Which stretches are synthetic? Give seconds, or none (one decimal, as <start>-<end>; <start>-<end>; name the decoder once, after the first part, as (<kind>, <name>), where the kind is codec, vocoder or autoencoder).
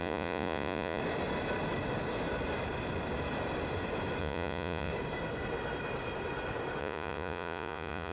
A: 0.0-1.0 (vocoder, Vocos); 4.2-4.9; 6.8-8.1